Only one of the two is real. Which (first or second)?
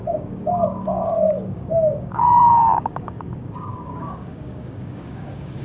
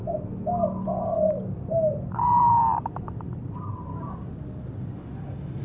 second